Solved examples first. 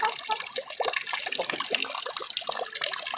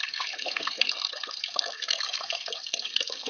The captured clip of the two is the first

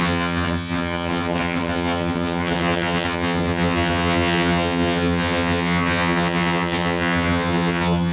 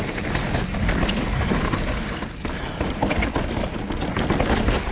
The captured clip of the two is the second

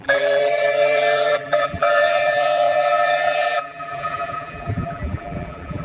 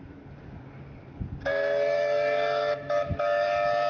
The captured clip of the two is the second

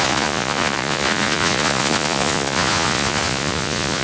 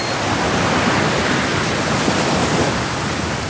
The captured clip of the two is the second